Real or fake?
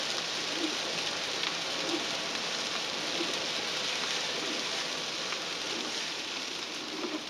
real